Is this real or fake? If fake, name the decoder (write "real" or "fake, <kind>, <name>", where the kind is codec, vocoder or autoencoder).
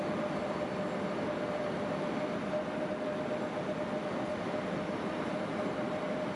real